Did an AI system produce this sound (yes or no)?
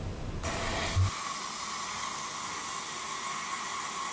no